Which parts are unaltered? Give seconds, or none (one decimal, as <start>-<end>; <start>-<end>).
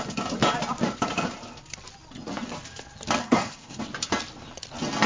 0.0-3.2; 3.8-5.1